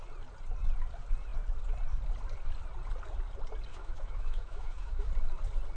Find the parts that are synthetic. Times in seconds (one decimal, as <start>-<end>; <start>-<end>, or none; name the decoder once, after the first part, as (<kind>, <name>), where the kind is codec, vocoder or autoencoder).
3.7-5.1 (autoencoder, DAC-VAE)